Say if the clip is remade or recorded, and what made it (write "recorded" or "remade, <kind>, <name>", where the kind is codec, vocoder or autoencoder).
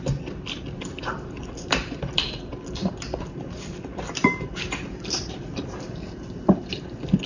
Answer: remade, vocoder, BigVGAN v2